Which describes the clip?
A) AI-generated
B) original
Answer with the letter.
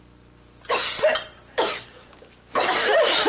B